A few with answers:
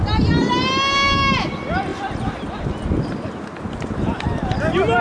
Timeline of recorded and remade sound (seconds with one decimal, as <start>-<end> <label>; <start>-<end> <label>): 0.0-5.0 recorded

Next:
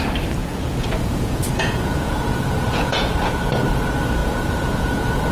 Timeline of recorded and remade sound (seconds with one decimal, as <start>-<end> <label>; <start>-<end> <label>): 0.0-0.4 recorded; 0.4-3.1 remade; 3.1-4.2 recorded; 4.2-5.3 remade

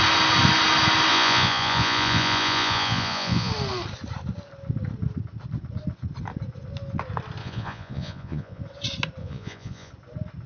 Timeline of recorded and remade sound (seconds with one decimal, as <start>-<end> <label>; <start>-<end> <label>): 0.0-1.1 recorded; 1.1-3.5 remade; 3.5-7.4 recorded; 7.4-8.6 remade; 8.6-9.2 recorded; 9.2-9.9 remade; 9.9-10.5 recorded

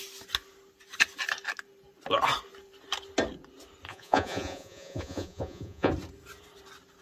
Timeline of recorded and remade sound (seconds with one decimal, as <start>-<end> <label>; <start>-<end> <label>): 0.0-3.9 recorded; 3.9-5.9 remade; 5.9-7.0 recorded